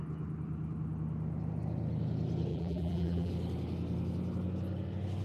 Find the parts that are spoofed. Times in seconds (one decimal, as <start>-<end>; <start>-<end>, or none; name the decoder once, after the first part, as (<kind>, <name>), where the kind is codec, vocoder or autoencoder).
2.5-3.3 (vocoder, BigVGAN v2)